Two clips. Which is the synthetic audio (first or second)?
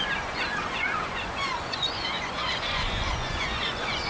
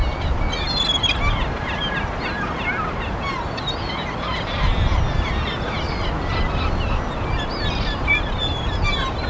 first